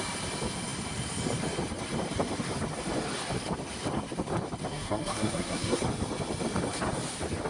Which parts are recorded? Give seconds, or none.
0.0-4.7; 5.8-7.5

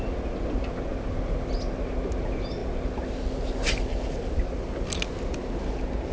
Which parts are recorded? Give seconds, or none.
0.0-6.1

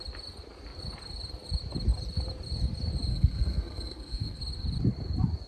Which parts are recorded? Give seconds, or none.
0.0-3.1; 4.4-5.5

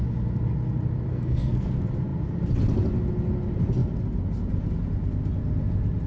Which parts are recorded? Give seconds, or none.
0.0-1.1; 1.7-6.1

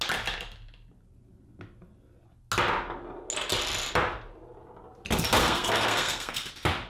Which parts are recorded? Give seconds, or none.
0.0-5.4; 6.5-6.9

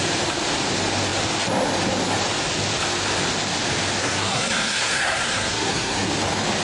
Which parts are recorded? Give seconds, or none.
0.0-4.0; 6.1-6.6

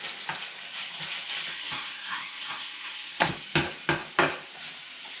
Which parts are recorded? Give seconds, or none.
0.0-1.5; 3.3-5.2